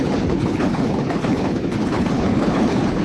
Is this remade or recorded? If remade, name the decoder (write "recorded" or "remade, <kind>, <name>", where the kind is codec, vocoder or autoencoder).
remade, codec, HILCodec